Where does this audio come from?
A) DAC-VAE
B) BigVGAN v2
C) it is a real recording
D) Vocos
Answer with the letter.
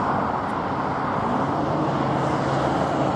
C